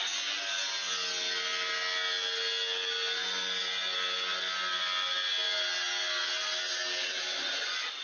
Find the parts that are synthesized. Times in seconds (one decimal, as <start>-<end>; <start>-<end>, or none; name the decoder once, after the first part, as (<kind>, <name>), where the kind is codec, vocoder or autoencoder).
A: none